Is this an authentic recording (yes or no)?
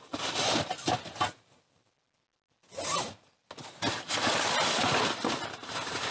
yes